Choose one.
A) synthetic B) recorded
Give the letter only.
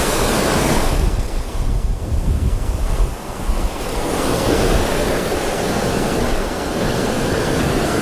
A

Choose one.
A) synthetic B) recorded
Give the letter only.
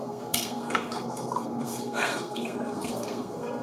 A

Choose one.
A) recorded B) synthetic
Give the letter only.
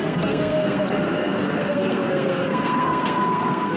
B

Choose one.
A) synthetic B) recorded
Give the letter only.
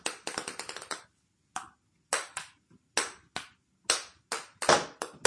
B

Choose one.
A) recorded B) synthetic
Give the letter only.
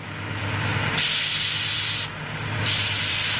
A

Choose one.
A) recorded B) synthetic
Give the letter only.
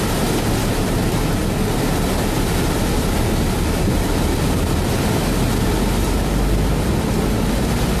A